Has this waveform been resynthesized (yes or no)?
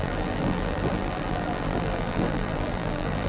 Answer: yes